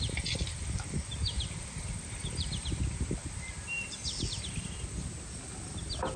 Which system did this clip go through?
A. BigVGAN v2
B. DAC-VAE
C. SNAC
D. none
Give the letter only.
D